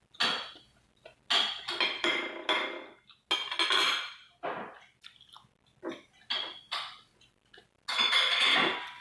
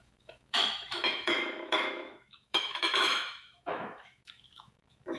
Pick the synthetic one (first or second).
second